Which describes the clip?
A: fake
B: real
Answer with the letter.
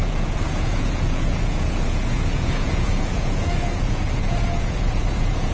A